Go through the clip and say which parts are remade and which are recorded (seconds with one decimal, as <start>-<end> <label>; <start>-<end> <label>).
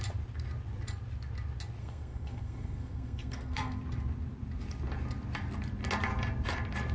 0.0-1.8 recorded; 1.8-3.8 remade; 3.8-6.9 recorded